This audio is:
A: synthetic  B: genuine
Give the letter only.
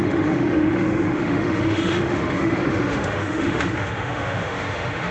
A